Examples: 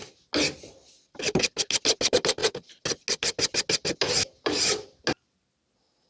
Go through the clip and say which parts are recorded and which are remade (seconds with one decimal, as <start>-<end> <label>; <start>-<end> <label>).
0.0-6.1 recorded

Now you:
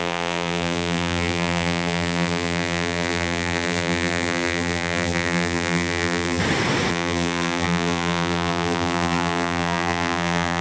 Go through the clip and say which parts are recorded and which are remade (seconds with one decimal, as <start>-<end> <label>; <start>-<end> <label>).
0.0-6.4 remade; 6.4-6.9 recorded; 6.9-10.6 remade

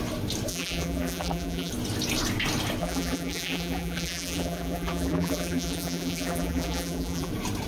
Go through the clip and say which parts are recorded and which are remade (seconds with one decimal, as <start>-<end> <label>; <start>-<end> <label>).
0.0-0.5 recorded; 0.5-1.7 remade; 1.7-2.8 recorded; 2.8-7.3 remade; 7.3-7.7 recorded